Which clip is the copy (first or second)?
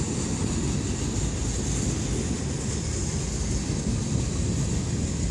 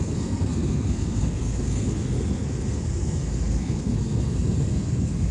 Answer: second